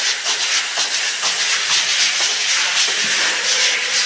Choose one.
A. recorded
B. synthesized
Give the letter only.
A